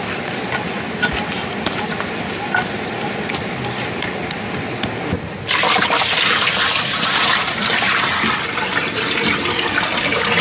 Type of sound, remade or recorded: recorded